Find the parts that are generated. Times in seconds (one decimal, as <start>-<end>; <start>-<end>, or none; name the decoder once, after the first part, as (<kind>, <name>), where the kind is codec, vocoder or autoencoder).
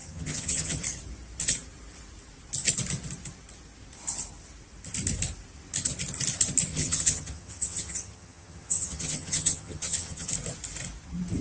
0.0-0.8 (vocoder, HiFi-GAN); 6.7-10.3